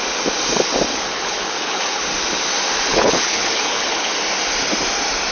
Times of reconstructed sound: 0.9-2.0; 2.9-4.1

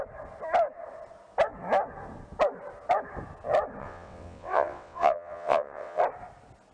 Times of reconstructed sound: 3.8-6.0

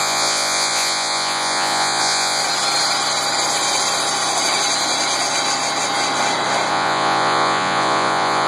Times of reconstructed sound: 0.0-2.4; 6.7-8.5

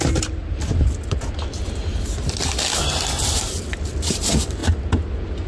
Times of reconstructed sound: 0.0-0.4; 3.7-4.6